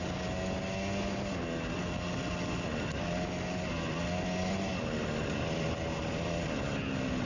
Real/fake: real